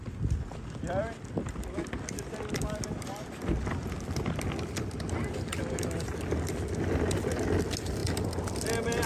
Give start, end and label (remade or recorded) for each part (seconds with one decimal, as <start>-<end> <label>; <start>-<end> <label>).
0.0-9.1 recorded